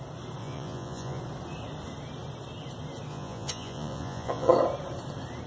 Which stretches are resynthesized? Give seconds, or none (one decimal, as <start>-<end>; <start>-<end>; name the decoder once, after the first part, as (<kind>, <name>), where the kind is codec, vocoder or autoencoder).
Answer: 0.4-1.2 (vocoder, Vocos); 3.1-4.5